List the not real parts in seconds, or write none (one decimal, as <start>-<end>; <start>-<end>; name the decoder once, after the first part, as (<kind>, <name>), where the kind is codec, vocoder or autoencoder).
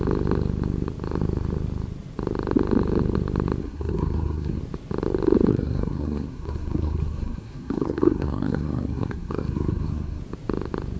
3.6-4.6 (codec, SNAC); 5.5-10.2